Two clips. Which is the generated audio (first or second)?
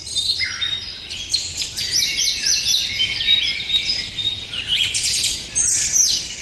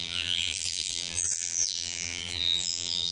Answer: second